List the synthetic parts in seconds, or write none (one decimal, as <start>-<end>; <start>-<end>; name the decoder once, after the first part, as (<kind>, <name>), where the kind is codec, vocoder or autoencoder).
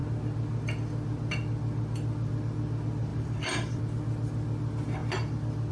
3.1-3.8 (vocoder, BigVGAN v2)